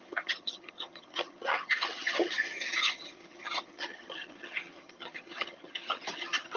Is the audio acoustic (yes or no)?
no